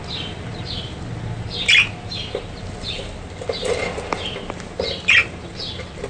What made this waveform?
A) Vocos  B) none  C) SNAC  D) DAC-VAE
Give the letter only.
B